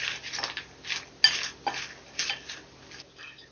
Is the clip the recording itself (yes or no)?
yes